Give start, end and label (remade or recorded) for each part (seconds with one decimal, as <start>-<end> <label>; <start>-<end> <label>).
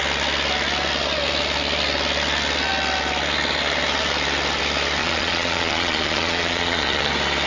0.0-5.0 recorded; 5.0-7.1 remade; 7.1-7.5 recorded